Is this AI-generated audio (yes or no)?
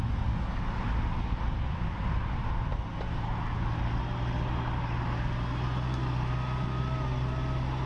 no